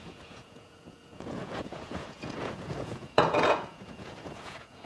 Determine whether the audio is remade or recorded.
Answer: remade